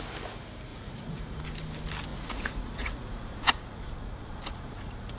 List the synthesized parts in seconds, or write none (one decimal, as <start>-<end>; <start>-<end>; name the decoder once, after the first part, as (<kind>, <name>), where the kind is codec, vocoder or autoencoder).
0.7-1.4 (vocoder, Vocos); 2.1-5.2